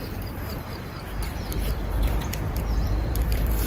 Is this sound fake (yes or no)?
yes